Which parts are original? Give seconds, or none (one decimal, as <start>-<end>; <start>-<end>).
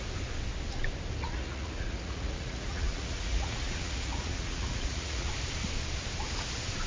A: 0.0-1.2; 5.3-6.9